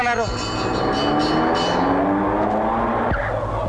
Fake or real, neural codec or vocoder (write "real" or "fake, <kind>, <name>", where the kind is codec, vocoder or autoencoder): real